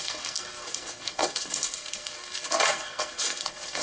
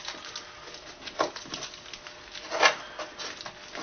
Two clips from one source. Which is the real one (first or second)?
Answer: second